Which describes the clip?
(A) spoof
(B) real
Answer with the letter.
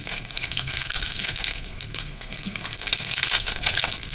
A